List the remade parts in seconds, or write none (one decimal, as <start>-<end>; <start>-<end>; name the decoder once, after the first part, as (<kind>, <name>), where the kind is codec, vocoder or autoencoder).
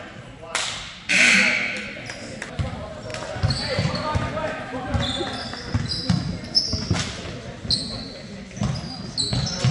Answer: 3.1-3.9 (vocoder, BigVGAN v2)